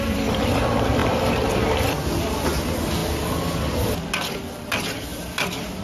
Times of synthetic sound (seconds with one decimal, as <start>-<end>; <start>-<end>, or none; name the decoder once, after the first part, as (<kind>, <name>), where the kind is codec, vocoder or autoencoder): 1.0-1.7 (vocoder, BigVGAN v2); 5.1-5.8